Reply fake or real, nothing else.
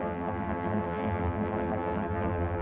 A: fake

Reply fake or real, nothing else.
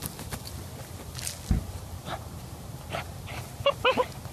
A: real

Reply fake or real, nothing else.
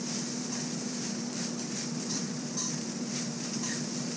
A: fake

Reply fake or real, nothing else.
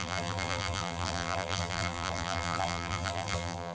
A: fake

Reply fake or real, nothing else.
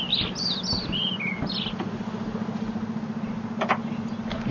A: fake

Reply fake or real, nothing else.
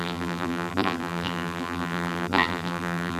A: fake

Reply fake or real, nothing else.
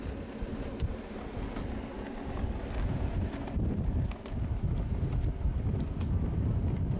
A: real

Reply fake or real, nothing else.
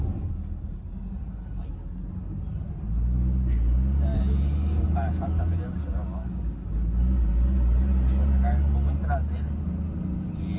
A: real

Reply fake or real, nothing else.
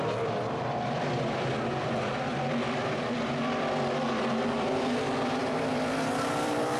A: fake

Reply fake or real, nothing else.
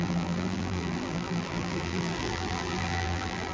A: fake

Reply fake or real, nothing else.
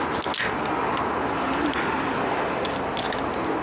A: real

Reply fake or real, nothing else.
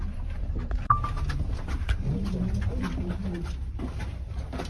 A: fake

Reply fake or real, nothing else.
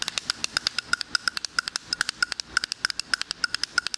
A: real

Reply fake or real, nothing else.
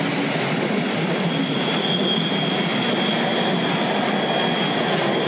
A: real